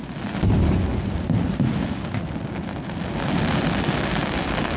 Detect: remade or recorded recorded